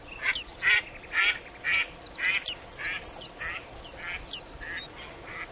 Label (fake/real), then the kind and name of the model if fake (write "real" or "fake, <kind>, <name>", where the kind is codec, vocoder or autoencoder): real